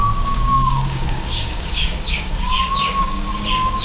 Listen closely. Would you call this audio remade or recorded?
remade